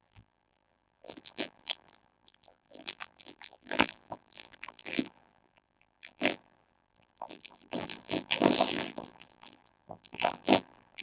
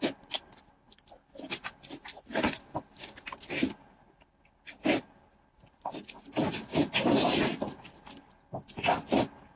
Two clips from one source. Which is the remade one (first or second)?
first